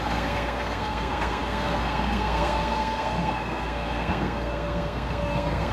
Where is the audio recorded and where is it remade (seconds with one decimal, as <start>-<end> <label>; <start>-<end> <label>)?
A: 0.0-5.7 remade